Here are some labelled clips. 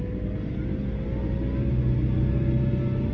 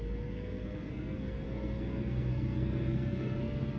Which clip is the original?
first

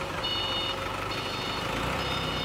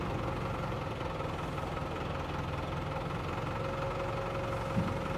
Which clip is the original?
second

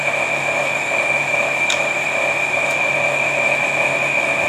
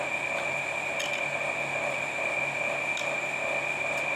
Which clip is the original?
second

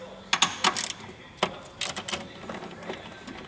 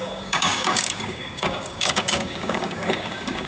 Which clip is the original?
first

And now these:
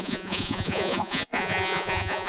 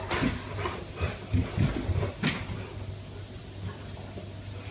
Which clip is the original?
second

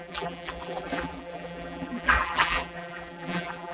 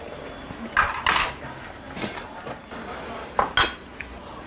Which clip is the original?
second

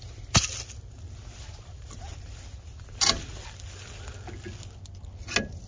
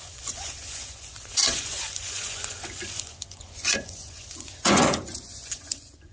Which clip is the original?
first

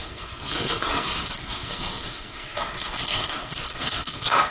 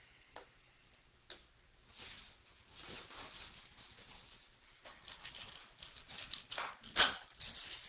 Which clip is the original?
second